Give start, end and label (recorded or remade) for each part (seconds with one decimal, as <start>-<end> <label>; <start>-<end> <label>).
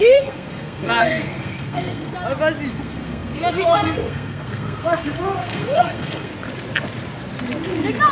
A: 0.0-2.1 remade; 2.1-2.7 recorded; 2.7-6.3 remade; 6.3-8.1 recorded